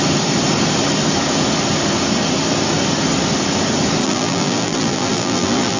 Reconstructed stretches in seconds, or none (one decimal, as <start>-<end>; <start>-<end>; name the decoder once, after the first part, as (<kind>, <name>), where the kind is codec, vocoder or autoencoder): 4.0-5.8 (vocoder, BigVGAN v2)